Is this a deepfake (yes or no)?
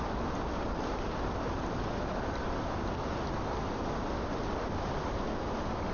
no